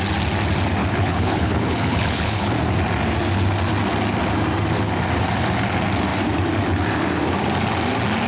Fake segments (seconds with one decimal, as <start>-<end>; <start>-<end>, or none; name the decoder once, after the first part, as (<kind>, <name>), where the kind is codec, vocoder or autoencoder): 0.8-2.5 (codec, HILCodec)